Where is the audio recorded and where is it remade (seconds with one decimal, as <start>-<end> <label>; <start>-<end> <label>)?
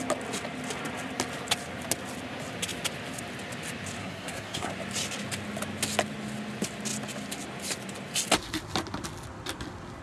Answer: 0.0-4.0 recorded; 4.0-4.7 remade; 4.7-10.0 recorded